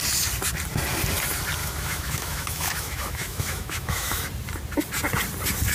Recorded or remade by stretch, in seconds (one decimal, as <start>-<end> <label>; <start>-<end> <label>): 0.0-1.6 recorded; 1.6-4.3 remade; 4.3-5.7 recorded